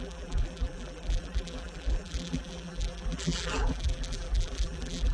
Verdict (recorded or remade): remade